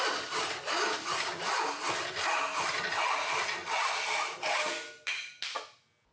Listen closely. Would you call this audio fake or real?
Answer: real